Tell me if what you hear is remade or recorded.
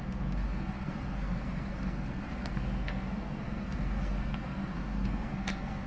remade